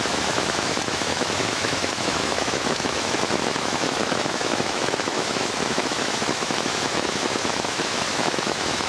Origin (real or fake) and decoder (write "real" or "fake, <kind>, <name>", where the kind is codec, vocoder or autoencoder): fake, autoencoder, DAC-VAE